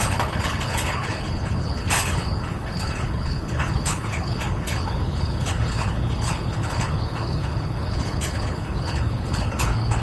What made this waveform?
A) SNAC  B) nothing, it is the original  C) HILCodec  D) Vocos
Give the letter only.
C